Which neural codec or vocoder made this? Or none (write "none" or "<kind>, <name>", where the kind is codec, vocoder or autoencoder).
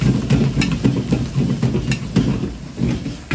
none